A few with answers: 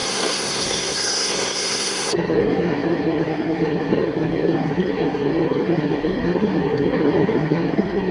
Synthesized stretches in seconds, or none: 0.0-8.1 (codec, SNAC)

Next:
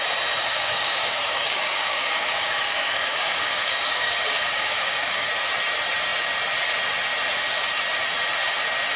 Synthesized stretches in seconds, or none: 0.4-5.3 (codec, DAC)